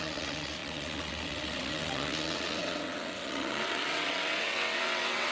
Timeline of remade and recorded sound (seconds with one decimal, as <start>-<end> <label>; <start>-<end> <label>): 0.0-5.3 remade